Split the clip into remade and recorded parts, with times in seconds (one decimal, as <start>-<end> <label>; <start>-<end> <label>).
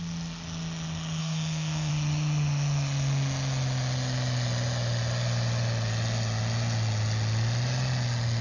0.0-1.2 recorded; 1.2-1.9 remade; 1.9-8.4 recorded